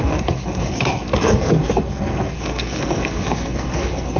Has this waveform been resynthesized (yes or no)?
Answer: yes